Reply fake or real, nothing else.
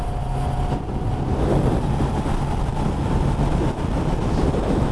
real